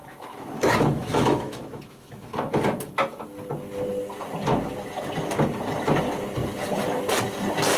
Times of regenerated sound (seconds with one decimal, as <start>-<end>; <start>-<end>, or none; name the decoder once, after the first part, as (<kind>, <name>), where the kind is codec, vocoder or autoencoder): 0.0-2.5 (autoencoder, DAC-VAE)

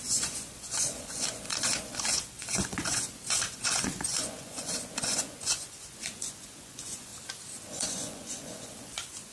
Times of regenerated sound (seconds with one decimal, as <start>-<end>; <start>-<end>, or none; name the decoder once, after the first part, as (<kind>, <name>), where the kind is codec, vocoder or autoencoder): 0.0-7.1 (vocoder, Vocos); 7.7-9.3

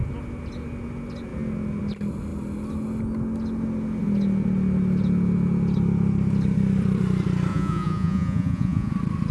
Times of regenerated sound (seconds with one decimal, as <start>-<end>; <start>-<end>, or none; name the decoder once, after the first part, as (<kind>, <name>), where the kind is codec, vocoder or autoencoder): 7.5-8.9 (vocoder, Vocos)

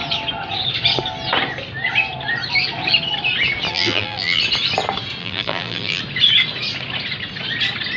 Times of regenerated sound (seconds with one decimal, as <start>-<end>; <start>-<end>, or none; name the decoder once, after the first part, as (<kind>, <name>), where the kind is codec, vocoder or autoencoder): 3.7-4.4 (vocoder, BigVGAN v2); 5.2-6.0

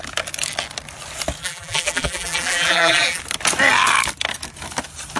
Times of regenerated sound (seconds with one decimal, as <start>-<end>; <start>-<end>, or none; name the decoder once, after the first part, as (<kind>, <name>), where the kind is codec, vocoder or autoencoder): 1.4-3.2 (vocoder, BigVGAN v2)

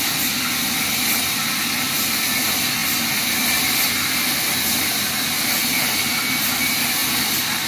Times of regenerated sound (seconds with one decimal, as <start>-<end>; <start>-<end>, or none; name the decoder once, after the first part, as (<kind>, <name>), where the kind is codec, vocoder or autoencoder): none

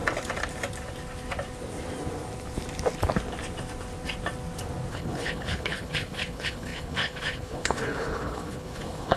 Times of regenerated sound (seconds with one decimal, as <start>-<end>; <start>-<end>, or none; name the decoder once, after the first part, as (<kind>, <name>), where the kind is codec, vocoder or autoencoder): 4.9-9.2 (codec, HILCodec)